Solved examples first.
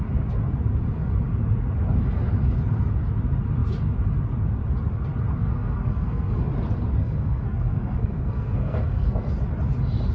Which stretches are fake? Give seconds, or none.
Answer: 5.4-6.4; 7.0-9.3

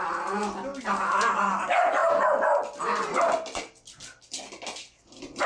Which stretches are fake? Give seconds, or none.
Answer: none

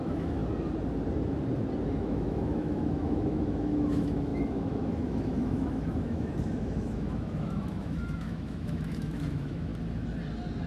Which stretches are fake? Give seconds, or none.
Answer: 0.0-0.4; 1.8-9.7

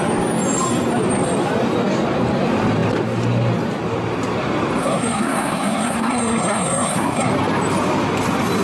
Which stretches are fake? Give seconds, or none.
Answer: 4.8-7.3

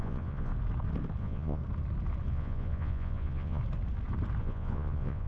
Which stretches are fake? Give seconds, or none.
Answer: 0.0-0.5; 1.2-1.6; 2.3-3.6; 4.4-5.3

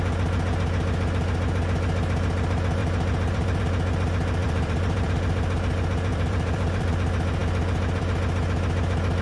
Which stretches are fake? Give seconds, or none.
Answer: 2.8-3.6; 4.4-5.1; 6.1-6.9

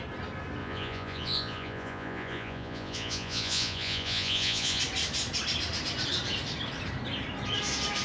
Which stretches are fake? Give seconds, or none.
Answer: 0.6-4.8